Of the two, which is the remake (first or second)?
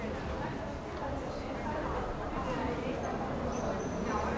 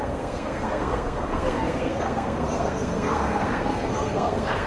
second